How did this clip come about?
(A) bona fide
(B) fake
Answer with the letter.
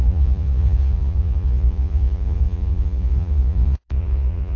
B